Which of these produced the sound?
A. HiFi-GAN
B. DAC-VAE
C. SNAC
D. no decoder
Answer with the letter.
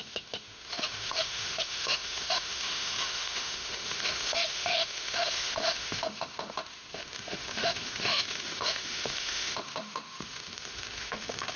B